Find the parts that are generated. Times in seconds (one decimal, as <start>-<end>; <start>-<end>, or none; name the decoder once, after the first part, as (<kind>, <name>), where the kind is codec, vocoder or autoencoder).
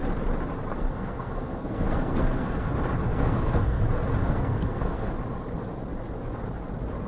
0.7-2.7 (codec, SNAC); 3.1-3.8; 4.2-5.1